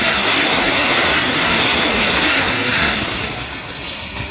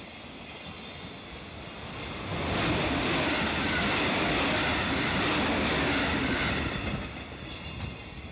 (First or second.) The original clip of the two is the second